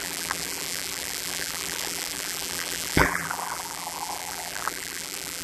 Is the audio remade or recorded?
remade